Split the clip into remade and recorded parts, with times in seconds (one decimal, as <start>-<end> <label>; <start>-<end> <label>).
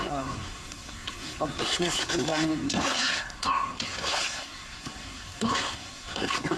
0.0-6.6 remade